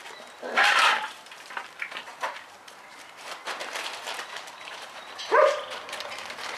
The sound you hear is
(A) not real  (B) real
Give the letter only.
A